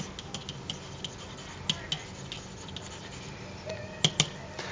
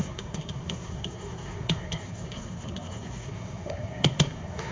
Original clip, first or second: first